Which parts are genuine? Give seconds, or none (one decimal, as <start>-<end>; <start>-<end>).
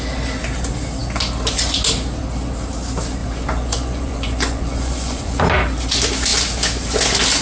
0.0-3.2; 5.4-7.4